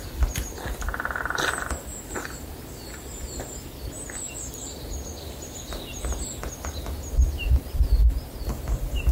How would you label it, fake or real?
real